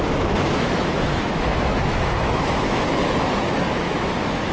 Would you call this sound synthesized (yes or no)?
yes